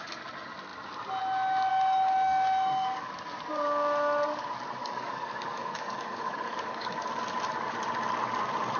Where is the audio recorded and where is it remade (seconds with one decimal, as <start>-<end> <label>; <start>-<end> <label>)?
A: 0.0-1.7 recorded; 1.7-3.1 remade; 3.1-4.8 recorded; 4.8-7.2 remade; 7.2-8.8 recorded